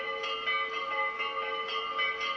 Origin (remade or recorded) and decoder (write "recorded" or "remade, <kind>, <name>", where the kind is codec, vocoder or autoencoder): recorded